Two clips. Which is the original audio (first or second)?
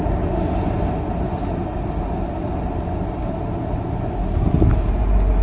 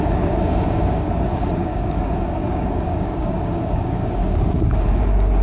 first